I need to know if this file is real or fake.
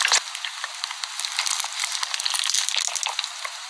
real